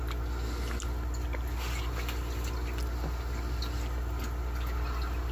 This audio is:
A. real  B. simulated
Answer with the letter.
A